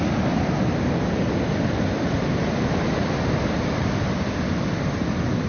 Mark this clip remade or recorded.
remade